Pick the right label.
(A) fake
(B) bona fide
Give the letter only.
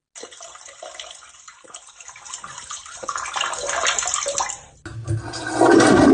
B